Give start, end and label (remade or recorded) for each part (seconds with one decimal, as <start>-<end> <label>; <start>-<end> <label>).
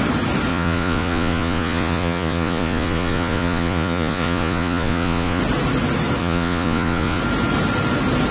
0.0-0.5 recorded; 0.5-5.4 remade; 5.4-6.2 recorded; 6.2-7.2 remade; 7.2-8.3 recorded